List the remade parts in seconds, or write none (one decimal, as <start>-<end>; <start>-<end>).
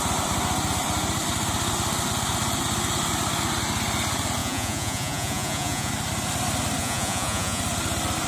4.4-5.9; 6.8-7.6